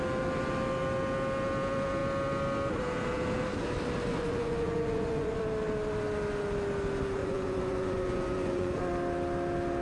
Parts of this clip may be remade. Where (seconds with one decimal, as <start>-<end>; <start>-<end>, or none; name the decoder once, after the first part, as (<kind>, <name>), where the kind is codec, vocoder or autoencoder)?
4.1-5.4 (vocoder, Vocos); 7.2-8.8